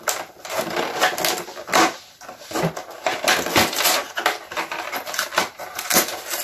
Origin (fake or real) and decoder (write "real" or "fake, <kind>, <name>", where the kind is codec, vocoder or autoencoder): real